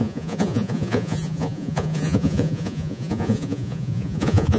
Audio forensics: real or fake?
fake